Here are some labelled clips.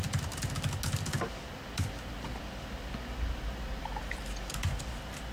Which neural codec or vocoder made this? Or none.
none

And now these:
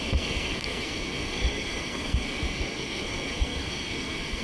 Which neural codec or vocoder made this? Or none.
codec, SNAC